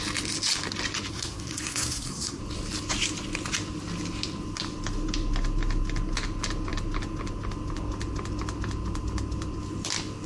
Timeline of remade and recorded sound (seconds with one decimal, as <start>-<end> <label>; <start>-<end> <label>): 0.0-1.1 recorded; 1.1-2.4 remade; 2.4-10.3 recorded